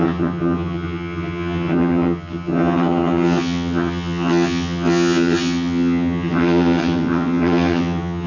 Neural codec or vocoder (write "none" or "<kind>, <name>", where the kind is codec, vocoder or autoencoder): vocoder, HiFi-GAN